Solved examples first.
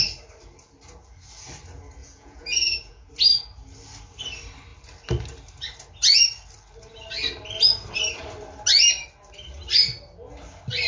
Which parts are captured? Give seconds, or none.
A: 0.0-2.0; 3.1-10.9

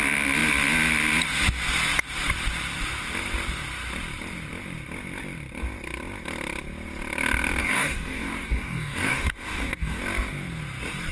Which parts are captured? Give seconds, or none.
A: 0.0-7.6; 10.0-11.1

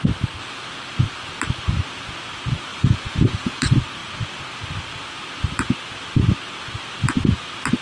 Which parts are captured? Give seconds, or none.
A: 0.0-2.7; 3.6-7.8